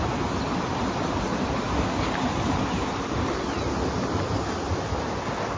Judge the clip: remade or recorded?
recorded